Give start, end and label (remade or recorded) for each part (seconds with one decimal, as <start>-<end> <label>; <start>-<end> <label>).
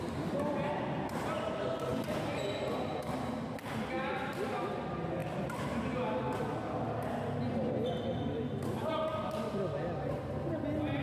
0.0-11.0 recorded